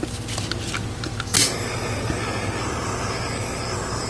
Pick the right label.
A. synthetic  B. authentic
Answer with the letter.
B